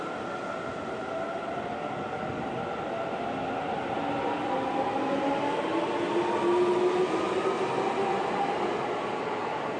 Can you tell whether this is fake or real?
real